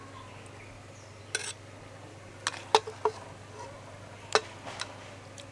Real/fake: real